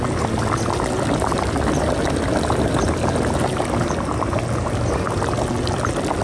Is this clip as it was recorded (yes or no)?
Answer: yes